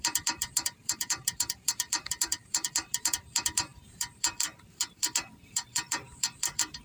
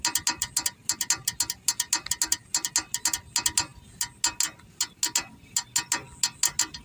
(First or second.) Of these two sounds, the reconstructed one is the first